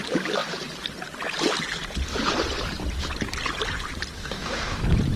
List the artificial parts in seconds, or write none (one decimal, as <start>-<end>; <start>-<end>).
4.2-4.8